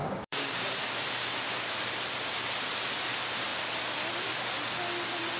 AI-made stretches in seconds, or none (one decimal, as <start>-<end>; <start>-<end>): 0.0-0.6